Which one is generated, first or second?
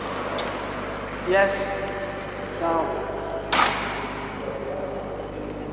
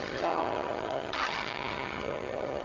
second